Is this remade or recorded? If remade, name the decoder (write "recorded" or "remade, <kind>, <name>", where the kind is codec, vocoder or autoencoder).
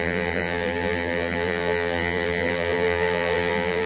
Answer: remade, vocoder, BigVGAN v2